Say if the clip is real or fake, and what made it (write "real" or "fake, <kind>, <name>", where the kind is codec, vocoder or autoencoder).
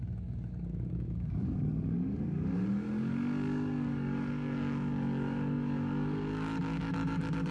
fake, codec, DAC